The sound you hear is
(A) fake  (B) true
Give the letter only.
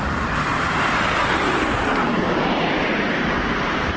A